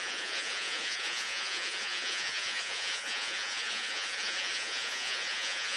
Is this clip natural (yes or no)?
no